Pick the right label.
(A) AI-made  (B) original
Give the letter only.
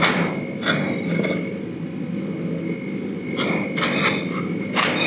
B